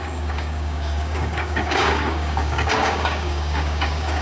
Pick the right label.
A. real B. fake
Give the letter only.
B